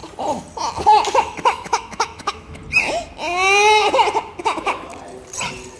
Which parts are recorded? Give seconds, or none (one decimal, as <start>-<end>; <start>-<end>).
0.0-1.2; 2.6-4.4; 4.9-5.8